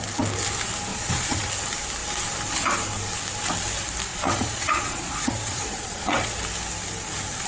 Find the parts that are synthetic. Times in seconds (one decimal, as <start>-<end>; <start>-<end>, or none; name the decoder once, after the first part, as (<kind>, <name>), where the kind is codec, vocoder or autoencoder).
0.9-1.5 (vocoder, Vocos); 4.1-6.4